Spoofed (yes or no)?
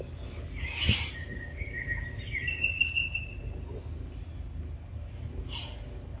no